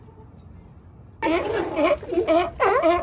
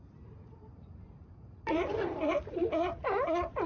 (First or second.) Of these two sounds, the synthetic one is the second